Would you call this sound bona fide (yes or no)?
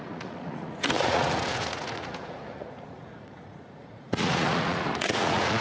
no